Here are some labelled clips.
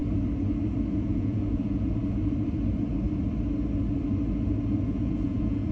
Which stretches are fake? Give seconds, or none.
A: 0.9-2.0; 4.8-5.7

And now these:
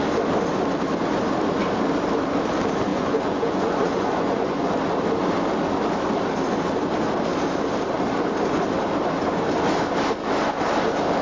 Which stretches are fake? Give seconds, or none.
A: 2.9-4.7

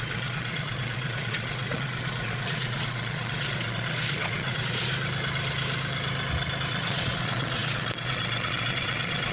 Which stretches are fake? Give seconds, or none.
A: 0.0-4.9; 6.7-9.3

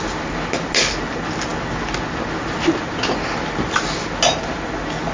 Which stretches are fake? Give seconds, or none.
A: none

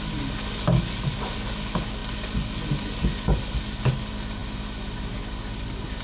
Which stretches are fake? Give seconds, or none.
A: none

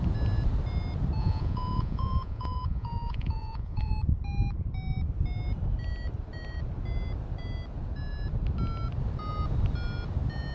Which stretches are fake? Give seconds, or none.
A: 1.2-3.9

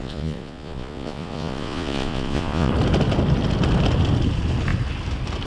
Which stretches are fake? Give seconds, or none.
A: 0.0-2.7

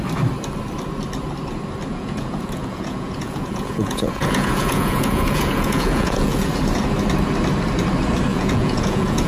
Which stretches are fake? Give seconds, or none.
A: 1.9-6.5; 8.3-9.3